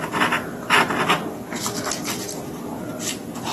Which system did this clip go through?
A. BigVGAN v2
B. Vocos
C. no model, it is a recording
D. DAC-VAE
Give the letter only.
C